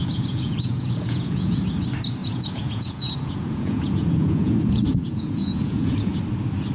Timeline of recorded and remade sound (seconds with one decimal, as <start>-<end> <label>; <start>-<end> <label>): 0.0-1.6 remade; 1.6-2.2 recorded; 2.2-6.2 remade; 6.2-6.7 recorded